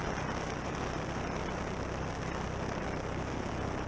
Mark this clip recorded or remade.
recorded